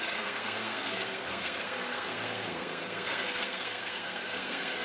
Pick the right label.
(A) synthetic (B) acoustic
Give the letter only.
A